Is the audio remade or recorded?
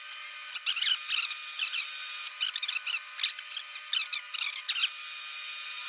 recorded